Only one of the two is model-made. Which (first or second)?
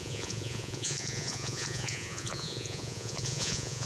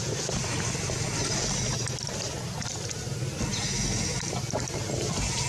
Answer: first